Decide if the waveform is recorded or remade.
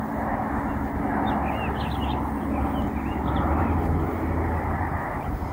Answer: recorded